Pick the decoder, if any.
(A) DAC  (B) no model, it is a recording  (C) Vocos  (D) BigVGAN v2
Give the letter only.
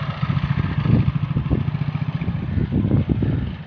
B